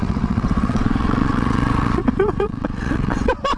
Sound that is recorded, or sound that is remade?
remade